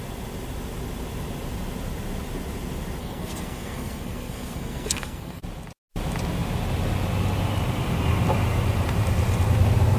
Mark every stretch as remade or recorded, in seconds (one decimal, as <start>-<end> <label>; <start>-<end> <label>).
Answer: 0.0-3.0 recorded; 3.0-5.4 remade; 5.4-10.0 recorded